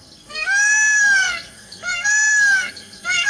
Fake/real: fake